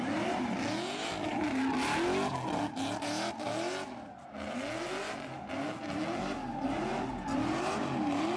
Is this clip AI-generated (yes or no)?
no